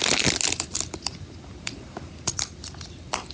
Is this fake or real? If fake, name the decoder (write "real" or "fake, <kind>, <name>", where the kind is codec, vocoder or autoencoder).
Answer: real